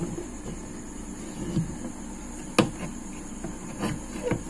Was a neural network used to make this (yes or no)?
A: no